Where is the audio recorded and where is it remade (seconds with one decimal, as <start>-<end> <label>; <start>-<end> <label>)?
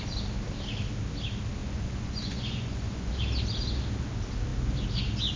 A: 0.0-1.6 recorded; 1.6-3.1 remade; 3.1-5.4 recorded